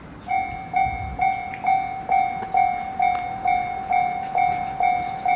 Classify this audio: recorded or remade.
recorded